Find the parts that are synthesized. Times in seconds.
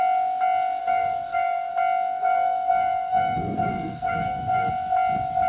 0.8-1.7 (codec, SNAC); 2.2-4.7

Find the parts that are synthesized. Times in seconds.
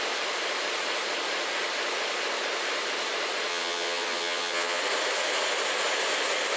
3.5-4.8 (vocoder, HiFi-GAN)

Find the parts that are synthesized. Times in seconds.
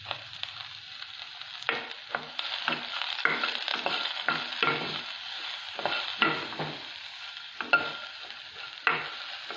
none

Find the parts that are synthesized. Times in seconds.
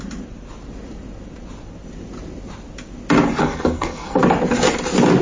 3.4-4.2 (codec, SNAC)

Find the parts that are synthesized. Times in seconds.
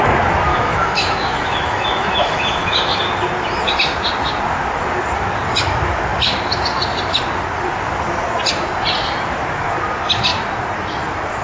0.5-3.0 (autoencoder, DAC-VAE)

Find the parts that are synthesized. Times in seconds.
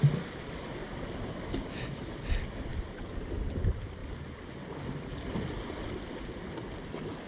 none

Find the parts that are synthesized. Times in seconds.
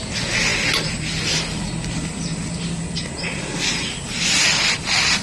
none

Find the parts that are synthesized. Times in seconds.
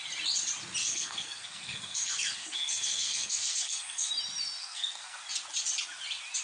0.8-4.1 (codec, SNAC); 4.6-5.2